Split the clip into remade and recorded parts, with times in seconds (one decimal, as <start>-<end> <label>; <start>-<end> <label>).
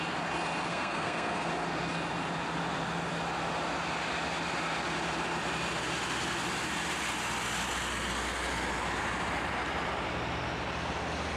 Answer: 0.0-0.7 recorded; 0.7-1.5 remade; 1.5-11.4 recorded